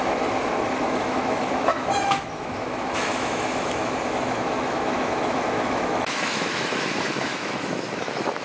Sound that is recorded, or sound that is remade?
remade